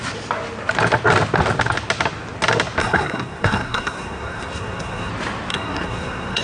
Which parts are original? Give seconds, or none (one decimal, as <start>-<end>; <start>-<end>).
0.0-2.8; 5.1-5.5